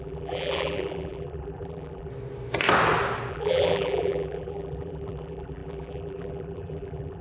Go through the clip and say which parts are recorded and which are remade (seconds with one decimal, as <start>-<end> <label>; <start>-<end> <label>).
0.0-2.1 remade; 2.1-3.3 recorded; 3.3-7.2 remade

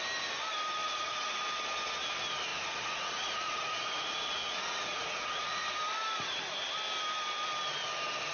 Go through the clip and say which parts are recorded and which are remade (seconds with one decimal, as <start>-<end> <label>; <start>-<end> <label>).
0.0-0.8 recorded; 0.8-1.4 remade; 1.4-2.5 recorded; 2.5-5.7 remade; 5.7-8.3 recorded

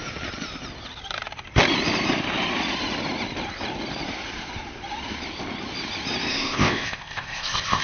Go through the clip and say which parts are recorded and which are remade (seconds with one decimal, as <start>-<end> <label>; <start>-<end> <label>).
0.0-6.3 recorded; 6.3-7.8 remade

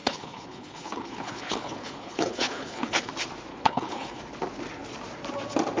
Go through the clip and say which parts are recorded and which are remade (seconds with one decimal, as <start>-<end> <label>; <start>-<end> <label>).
0.0-3.1 remade; 3.1-3.5 recorded; 3.5-4.2 remade; 4.2-5.8 recorded

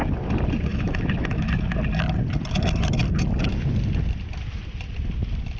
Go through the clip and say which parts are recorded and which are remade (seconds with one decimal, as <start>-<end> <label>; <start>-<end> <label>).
0.0-0.7 recorded; 0.7-1.5 remade; 1.5-5.6 recorded

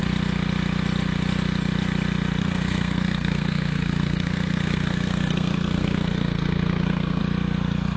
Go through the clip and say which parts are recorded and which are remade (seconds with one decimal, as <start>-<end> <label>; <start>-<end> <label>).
0.0-2.4 recorded; 2.4-7.2 remade; 7.2-8.0 recorded